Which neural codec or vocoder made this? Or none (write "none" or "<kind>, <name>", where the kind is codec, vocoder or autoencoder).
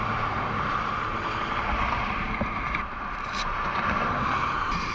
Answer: vocoder, BigVGAN v2